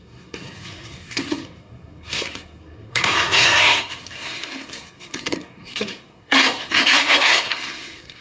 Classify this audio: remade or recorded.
remade